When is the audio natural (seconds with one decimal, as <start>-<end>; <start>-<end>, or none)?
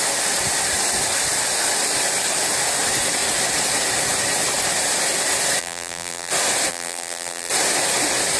0.0-5.6; 6.3-6.7; 7.5-8.4